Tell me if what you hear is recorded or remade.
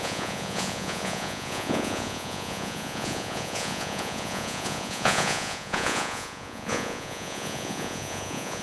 remade